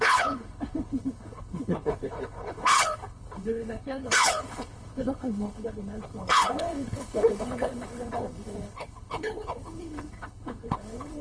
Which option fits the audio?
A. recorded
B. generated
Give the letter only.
B